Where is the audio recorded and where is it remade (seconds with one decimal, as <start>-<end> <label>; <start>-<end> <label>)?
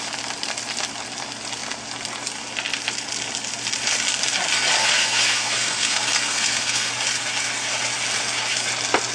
0.0-4.8 recorded; 4.8-6.9 remade; 6.9-9.1 recorded